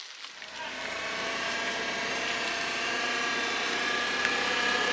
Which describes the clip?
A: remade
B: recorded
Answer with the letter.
B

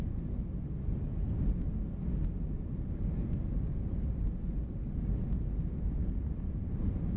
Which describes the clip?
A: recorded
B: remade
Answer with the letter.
A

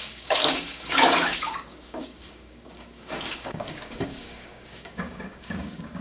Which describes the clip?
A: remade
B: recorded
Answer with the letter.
A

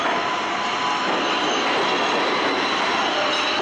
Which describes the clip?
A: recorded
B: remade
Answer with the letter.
A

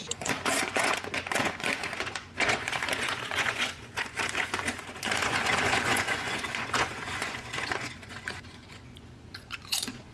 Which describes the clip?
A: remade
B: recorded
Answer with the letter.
A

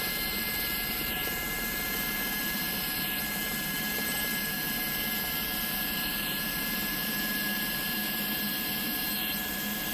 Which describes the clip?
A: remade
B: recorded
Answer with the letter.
A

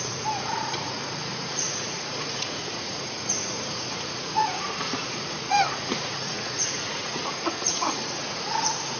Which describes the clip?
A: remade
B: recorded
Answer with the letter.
A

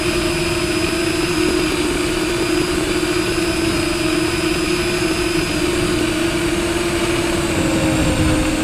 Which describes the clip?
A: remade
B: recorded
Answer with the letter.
B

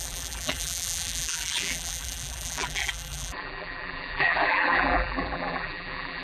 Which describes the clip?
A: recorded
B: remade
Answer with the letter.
B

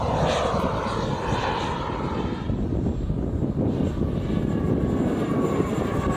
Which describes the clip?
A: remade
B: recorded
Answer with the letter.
B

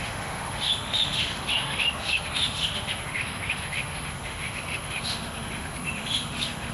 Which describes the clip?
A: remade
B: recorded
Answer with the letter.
A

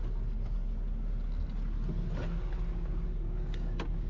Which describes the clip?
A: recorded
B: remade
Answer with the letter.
A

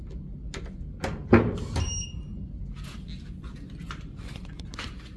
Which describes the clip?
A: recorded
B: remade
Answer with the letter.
A